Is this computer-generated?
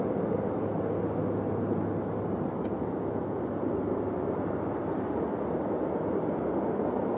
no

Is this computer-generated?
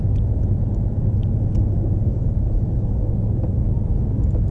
no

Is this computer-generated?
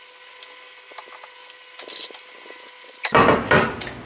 no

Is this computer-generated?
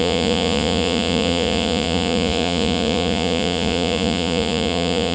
yes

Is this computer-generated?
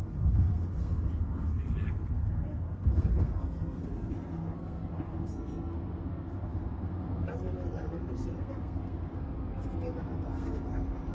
yes